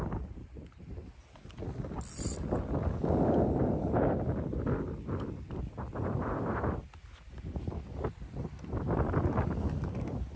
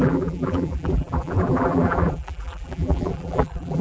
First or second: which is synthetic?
second